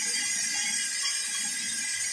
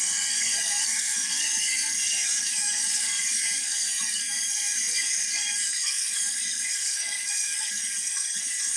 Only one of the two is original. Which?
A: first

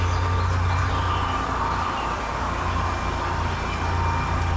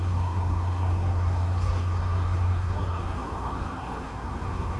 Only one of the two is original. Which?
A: first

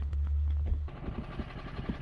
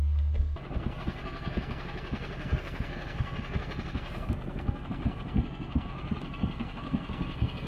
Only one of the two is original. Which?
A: first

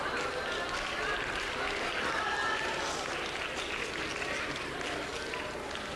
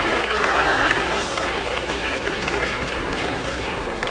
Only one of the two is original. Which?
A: first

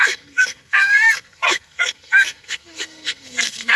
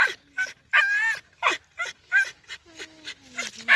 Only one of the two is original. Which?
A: second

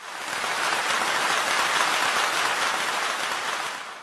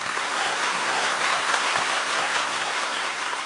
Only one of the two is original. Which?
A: first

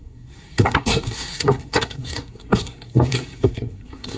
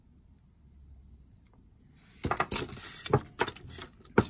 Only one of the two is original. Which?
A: second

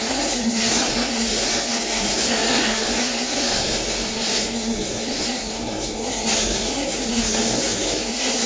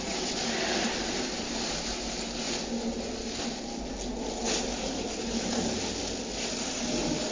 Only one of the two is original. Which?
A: second